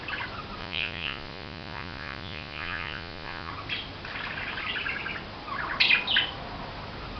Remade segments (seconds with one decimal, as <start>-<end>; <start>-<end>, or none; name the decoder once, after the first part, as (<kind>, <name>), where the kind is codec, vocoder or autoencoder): 0.6-3.5 (vocoder, Vocos)